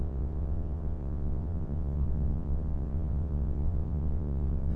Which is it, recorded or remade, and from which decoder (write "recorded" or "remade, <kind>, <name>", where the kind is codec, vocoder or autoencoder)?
remade, vocoder, WaveNeXt